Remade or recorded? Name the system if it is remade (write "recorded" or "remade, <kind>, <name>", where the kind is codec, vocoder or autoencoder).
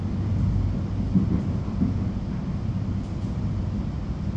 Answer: recorded